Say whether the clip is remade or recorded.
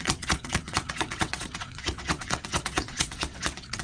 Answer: remade